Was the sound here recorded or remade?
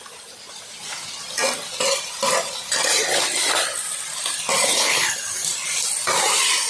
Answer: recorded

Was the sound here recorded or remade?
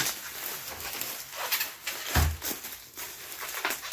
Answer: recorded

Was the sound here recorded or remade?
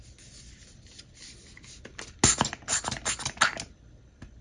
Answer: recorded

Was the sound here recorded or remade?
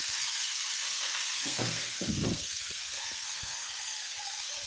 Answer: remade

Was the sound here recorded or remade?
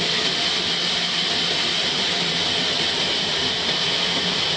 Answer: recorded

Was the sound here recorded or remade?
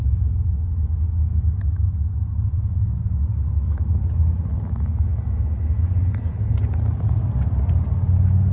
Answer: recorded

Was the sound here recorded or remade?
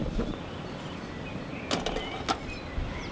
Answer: recorded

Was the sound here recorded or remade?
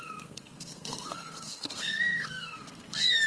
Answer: remade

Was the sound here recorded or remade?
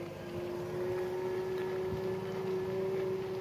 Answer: recorded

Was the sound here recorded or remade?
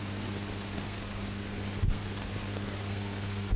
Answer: remade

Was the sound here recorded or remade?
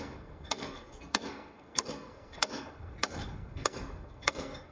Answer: remade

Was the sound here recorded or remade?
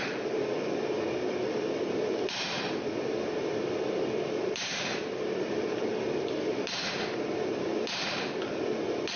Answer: recorded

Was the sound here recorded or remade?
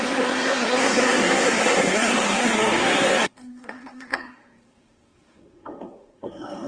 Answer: remade